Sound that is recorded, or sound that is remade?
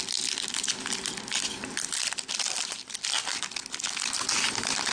recorded